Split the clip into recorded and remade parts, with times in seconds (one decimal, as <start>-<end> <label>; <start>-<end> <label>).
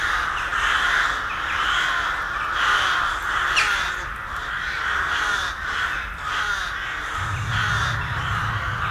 0.0-0.5 remade; 0.5-2.7 recorded; 2.7-6.3 remade; 6.3-8.0 recorded; 8.0-8.9 remade